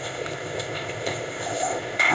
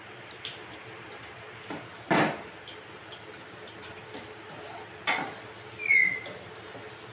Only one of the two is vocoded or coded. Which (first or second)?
first